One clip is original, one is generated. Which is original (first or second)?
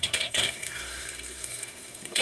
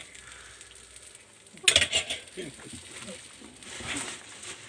second